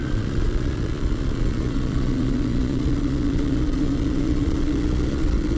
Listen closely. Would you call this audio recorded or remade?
remade